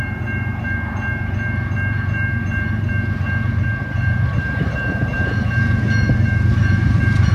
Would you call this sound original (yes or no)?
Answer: no